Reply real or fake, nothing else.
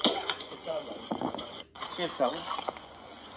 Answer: fake